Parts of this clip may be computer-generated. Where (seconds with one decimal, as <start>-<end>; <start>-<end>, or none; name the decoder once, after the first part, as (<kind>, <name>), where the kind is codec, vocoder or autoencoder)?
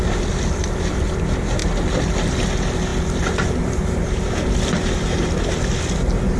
none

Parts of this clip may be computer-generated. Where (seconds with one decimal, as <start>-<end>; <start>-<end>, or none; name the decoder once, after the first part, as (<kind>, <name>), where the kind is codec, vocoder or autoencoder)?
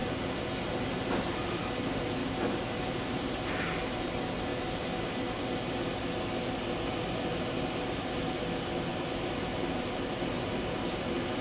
0.0-1.1 (vocoder, BigVGAN v2); 2.2-3.6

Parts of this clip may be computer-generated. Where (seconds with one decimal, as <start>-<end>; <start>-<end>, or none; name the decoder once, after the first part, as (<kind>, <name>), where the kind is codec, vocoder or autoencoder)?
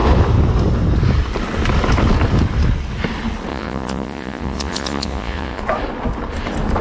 3.5-5.6 (vocoder, Vocos)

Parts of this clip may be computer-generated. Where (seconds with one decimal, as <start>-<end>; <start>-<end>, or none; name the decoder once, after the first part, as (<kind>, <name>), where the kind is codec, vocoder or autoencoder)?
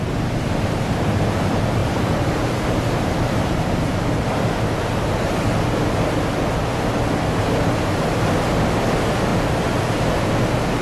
1.8-5.6 (vocoder, BigVGAN v2); 9.3-10.2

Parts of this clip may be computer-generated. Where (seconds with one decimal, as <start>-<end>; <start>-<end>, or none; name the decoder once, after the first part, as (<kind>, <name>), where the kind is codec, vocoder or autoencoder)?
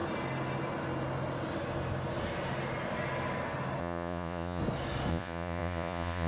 3.8-4.6 (vocoder, Vocos); 5.1-6.3